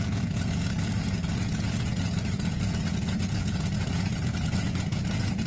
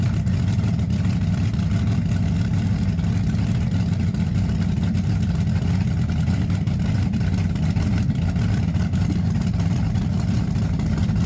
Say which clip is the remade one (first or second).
first